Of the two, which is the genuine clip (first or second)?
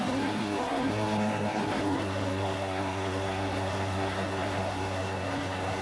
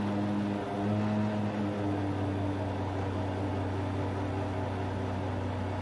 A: second